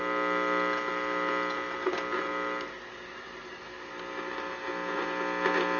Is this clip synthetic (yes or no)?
no